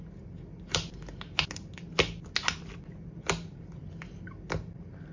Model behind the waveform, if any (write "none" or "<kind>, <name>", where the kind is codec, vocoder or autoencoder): none